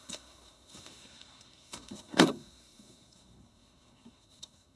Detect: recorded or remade remade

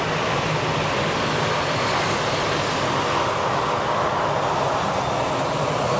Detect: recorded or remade recorded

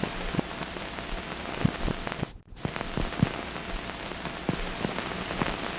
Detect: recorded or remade recorded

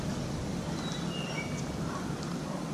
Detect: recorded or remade recorded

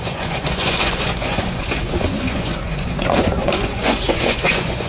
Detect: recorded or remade remade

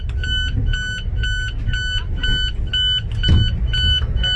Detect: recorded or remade recorded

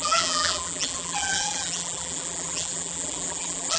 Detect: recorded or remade remade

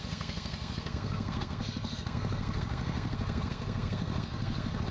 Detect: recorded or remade remade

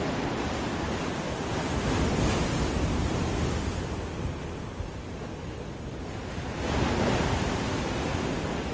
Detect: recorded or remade recorded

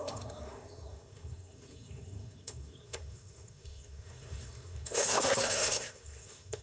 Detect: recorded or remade remade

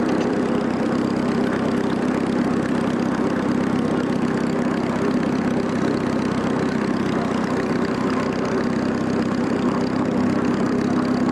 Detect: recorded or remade remade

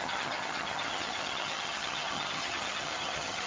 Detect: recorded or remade remade